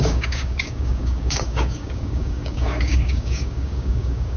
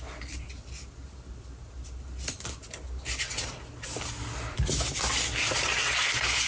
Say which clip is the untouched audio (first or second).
second